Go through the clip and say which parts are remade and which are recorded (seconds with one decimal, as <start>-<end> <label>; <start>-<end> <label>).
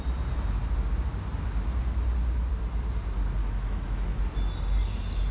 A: 0.0-3.4 recorded; 3.4-4.2 remade; 4.2-5.3 recorded